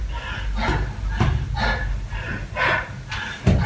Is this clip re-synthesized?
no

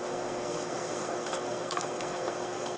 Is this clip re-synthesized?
yes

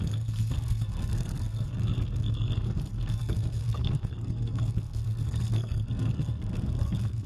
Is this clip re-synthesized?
yes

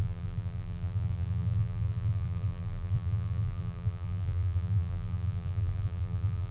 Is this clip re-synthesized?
yes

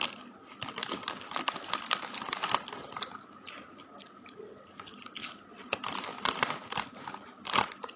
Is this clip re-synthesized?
no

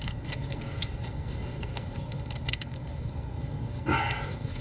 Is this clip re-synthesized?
yes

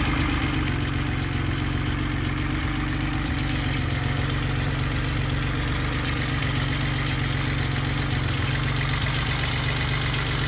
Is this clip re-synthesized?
no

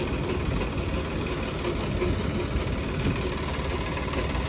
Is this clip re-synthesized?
no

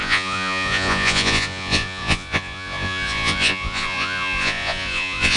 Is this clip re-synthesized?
yes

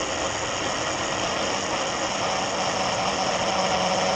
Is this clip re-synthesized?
no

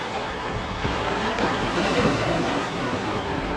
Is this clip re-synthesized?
yes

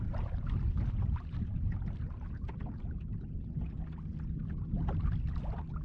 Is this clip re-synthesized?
no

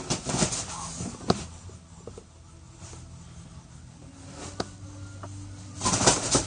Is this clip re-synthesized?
no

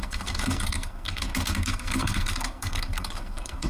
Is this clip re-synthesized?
yes